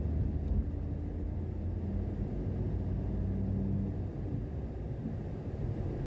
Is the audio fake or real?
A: real